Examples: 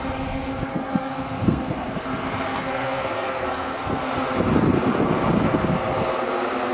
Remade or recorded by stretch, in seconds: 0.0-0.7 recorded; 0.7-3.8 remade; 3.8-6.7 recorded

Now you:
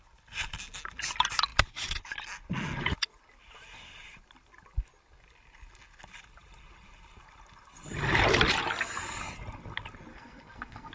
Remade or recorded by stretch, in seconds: 0.0-10.1 recorded; 10.1-10.9 remade